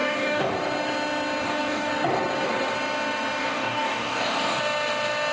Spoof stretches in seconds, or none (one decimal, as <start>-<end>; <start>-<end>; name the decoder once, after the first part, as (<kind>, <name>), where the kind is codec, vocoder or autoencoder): 0.0-0.5 (codec, DAC); 1.4-1.9; 3.4-4.6